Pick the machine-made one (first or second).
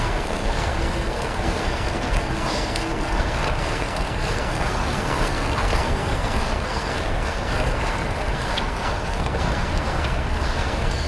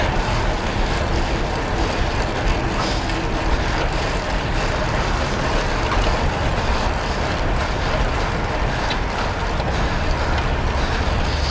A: first